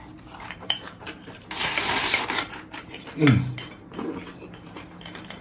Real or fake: fake